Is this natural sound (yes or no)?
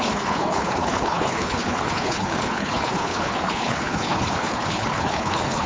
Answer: no